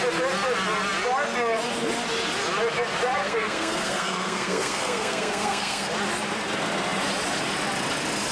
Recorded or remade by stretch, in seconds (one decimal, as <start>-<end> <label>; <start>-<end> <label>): 0.0-3.2 recorded; 3.2-5.9 remade; 5.9-8.3 recorded